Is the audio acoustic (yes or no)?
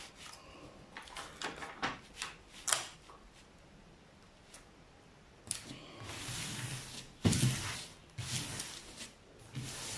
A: yes